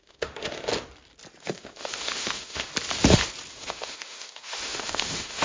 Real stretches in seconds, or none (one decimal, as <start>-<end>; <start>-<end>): 0.7-1.4; 2.7-3.5

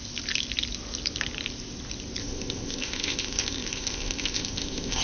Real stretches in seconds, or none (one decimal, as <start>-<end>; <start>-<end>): 0.0-2.2

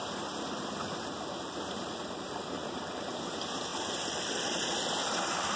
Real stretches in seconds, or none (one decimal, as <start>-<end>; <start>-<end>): 1.2-3.7; 4.8-5.6

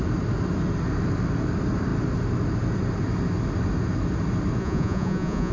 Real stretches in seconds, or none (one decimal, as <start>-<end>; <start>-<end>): 0.0-4.6

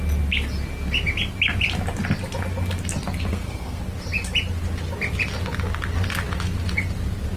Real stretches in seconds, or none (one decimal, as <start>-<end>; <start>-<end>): 0.0-3.3; 3.8-7.4

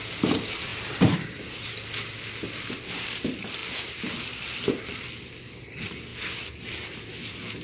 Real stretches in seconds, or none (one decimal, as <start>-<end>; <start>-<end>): 0.0-7.6